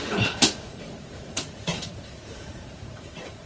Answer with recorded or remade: remade